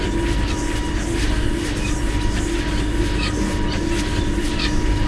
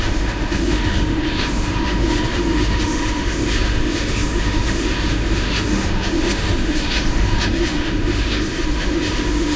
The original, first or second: first